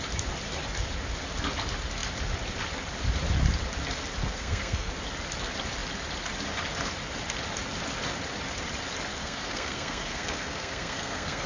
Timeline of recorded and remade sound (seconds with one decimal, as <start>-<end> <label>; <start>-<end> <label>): 0.0-4.2 recorded; 4.2-4.9 remade; 4.9-9.1 recorded; 9.1-11.5 remade